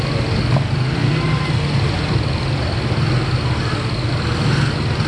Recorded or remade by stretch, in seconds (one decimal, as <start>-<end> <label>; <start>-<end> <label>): 0.0-5.1 recorded